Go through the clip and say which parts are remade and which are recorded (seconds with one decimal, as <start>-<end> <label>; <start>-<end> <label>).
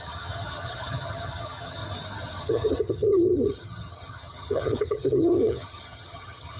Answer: 0.0-1.8 remade; 1.8-2.4 recorded; 2.4-6.6 remade